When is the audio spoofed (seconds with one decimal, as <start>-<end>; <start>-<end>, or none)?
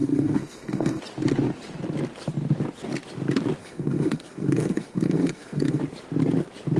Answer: 0.0-1.0; 3.6-5.8